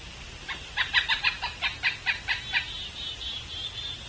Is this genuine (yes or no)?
yes